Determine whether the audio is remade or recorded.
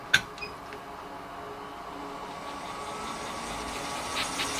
recorded